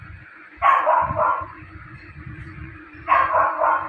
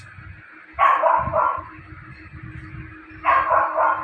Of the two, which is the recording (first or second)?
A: second